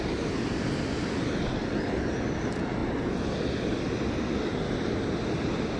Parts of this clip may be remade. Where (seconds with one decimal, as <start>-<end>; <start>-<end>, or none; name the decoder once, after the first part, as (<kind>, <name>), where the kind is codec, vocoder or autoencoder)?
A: none